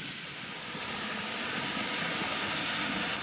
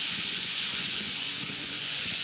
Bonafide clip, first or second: first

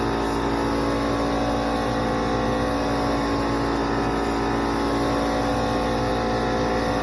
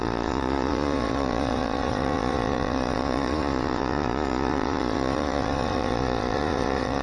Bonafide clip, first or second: first